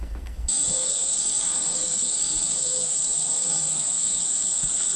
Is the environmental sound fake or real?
fake